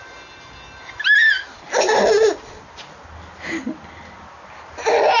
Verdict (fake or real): real